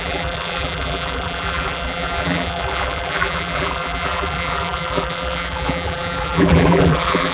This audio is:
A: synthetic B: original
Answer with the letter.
A